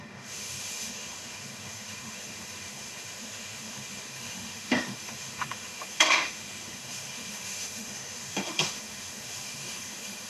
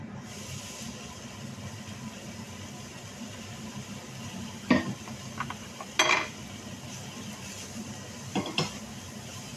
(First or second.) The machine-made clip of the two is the first